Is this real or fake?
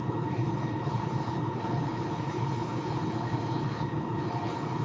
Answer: fake